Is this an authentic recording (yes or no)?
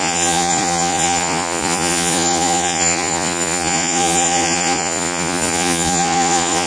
no